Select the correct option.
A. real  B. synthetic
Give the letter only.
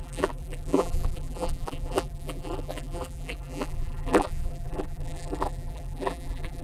B